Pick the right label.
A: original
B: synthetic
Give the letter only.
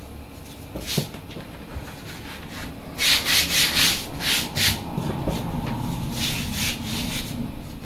A